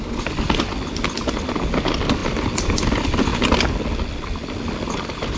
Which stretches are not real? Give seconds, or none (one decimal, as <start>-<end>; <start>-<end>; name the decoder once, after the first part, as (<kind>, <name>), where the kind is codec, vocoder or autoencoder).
none